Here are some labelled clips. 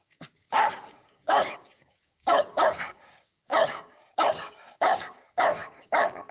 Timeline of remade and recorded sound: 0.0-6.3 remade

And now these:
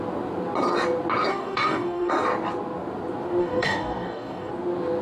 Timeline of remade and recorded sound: 0.0-1.3 recorded; 1.3-2.1 remade; 2.1-3.4 recorded; 3.4-4.5 remade; 4.5-5.0 recorded

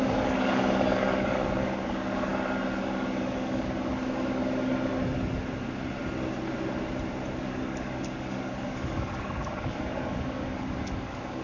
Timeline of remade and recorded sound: 0.0-2.3 remade; 2.3-2.8 recorded; 2.8-4.9 remade; 4.9-7.4 recorded; 7.4-11.4 remade